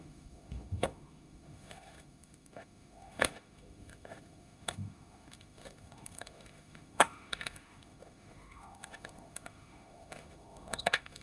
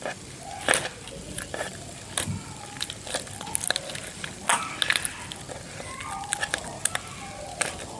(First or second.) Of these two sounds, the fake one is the first